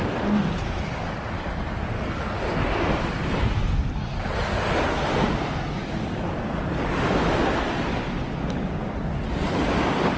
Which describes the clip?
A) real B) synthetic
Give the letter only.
A